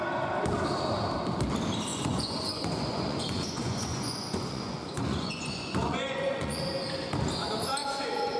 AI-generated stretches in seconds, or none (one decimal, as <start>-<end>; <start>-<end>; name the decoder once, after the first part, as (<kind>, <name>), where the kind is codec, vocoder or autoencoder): 1.9-6.6 (vocoder, Vocos); 7.8-8.4

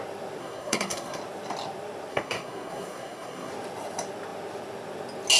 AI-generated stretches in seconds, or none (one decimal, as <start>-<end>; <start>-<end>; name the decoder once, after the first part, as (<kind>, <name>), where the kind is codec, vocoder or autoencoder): 0.4-1.2 (codec, SNAC); 2.1-3.5

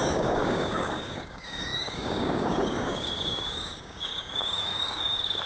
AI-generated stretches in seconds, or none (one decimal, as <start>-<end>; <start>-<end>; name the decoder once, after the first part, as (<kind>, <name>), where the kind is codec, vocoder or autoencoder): 0.0-5.5 (codec, DAC)

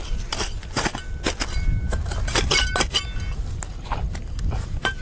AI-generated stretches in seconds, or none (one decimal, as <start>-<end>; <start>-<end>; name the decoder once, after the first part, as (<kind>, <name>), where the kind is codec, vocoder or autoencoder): none

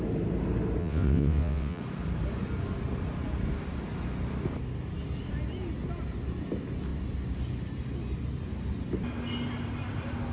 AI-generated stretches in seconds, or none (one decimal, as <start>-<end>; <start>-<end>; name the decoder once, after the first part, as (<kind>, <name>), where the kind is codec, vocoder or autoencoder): 0.8-1.8 (vocoder, WaveNeXt)

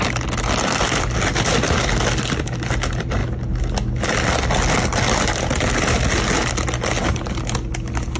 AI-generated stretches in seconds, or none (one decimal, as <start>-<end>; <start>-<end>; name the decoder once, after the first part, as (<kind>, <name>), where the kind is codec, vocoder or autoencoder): none

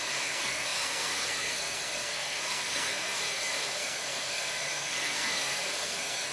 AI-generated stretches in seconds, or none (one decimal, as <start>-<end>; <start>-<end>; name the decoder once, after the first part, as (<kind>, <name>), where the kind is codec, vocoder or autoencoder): 0.0-6.3 (codec, SNAC)